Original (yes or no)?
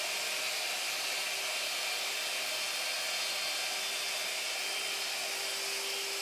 yes